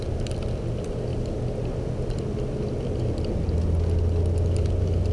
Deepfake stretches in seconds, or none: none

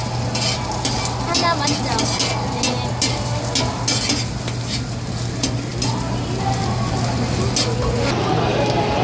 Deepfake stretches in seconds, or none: none

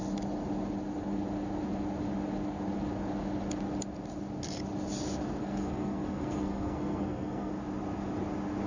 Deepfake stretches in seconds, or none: 5.4-7.5 (codec, SNAC)

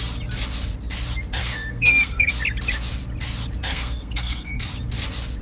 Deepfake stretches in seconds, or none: 1.4-2.3 (codec, SNAC); 3.7-4.7

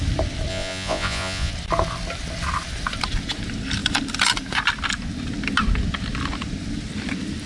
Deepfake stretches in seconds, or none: 0.5-1.5 (vocoder, Vocos)

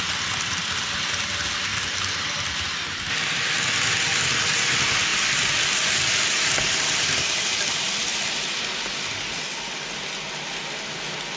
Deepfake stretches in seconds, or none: none

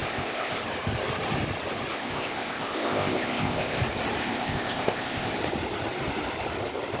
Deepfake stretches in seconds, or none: 0.0-0.6 (codec, ZipCodec); 1.9-3.8; 4.2-5.3

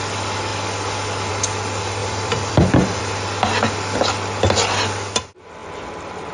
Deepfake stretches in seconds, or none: 2.0-3.0 (vocoder, BigVGAN v2)